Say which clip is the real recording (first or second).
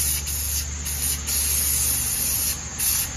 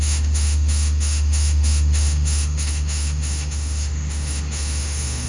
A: first